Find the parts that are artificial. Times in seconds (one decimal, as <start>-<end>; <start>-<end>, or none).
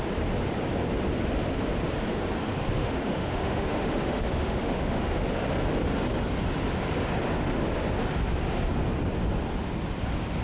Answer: 2.8-5.0